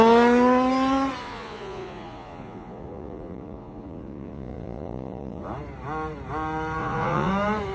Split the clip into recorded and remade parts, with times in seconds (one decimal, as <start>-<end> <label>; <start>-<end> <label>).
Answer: 0.0-1.2 recorded; 1.2-5.4 remade; 5.4-6.8 recorded; 6.8-7.3 remade; 7.3-7.7 recorded